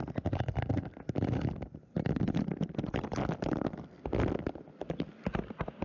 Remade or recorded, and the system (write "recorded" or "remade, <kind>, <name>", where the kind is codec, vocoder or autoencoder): recorded